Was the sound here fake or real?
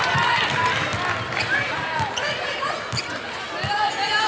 real